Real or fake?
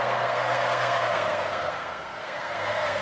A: fake